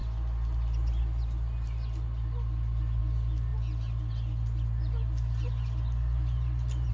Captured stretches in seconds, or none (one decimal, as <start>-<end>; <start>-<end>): 0.0-6.9